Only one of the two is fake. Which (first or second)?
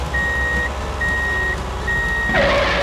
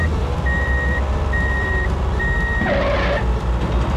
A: second